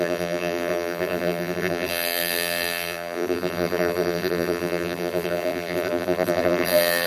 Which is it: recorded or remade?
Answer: remade